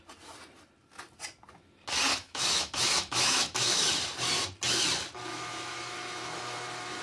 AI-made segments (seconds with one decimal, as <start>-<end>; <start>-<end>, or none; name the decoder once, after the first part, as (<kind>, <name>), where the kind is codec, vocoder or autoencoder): 2.1-3.9 (autoencoder, DAC-VAE); 5.3-7.0